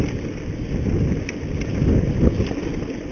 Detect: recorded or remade recorded